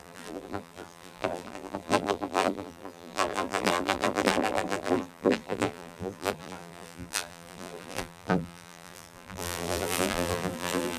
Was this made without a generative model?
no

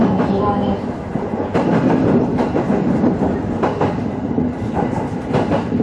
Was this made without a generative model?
yes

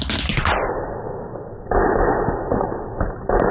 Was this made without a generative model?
yes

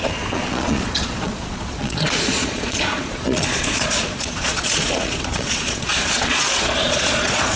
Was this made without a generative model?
no